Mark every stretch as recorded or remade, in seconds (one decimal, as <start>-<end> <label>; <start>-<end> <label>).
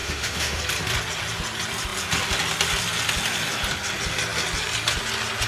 0.0-0.6 remade; 0.6-5.5 recorded